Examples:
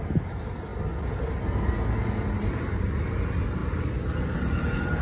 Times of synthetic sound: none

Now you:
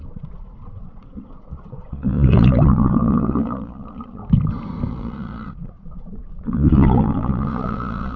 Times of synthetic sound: 0.0-4.2; 4.9-8.2